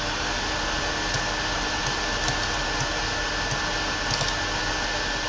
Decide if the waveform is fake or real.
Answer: real